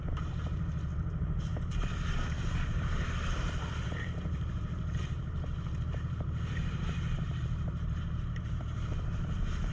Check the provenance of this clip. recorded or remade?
remade